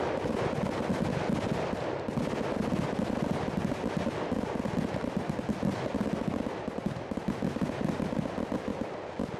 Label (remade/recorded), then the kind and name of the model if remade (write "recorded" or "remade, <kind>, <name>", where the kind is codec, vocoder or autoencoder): recorded